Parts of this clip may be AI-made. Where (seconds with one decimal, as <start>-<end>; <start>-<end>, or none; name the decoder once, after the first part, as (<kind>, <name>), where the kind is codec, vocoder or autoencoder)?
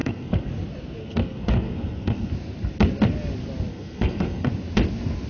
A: 0.0-0.5 (codec, SNAC); 1.0-2.3; 3.7-4.5